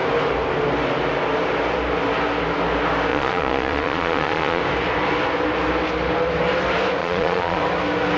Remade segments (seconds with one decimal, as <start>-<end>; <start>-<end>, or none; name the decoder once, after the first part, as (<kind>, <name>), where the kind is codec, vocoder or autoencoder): 3.1-4.6 (vocoder, Vocos); 7.0-7.6